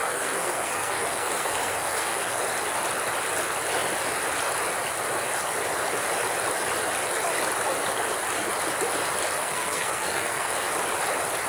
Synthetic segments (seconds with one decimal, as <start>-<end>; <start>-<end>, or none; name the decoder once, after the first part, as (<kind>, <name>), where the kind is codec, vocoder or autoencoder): 0.0-2.4 (codec, SNAC); 9.4-10.7